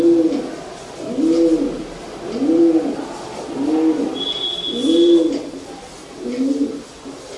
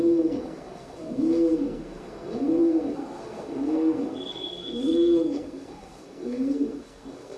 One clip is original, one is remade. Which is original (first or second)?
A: first